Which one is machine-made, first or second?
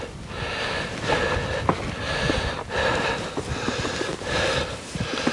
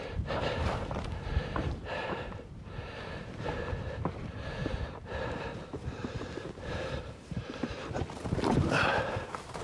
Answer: second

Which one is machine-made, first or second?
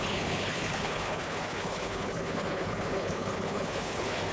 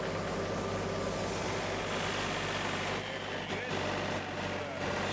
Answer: first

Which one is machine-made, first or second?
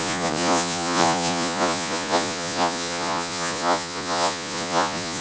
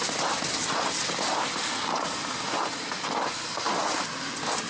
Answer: first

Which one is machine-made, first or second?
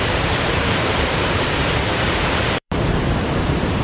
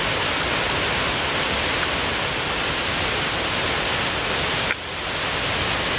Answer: first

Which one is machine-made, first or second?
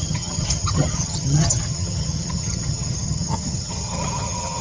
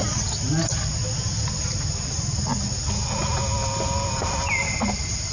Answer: first